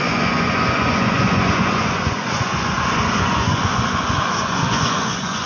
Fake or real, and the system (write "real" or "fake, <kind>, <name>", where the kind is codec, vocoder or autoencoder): fake, vocoder, Vocos